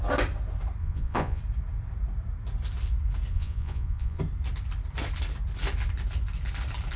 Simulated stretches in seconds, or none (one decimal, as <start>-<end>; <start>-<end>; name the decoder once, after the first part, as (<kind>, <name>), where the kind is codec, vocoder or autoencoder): 0.8-1.4 (vocoder, Vocos); 3.3-4.2